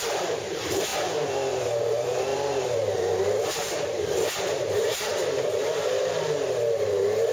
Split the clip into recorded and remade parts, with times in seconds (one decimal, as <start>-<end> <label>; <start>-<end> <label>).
0.0-7.3 remade